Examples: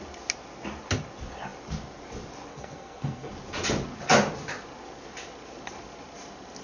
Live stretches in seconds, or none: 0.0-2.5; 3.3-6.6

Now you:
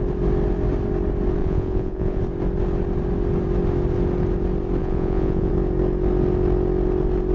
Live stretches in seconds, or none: 0.0-1.4; 2.2-4.8; 5.5-7.3

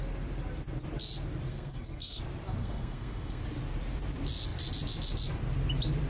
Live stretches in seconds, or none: 0.0-1.5; 2.2-2.6; 3.4-6.1

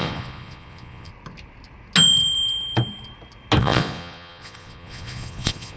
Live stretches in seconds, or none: 1.1-3.6

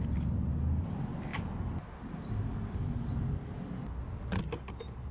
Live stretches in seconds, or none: 0.0-5.1